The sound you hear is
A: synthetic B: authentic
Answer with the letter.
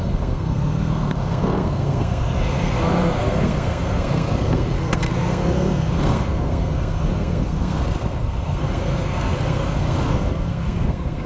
A